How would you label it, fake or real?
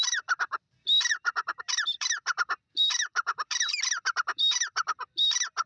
fake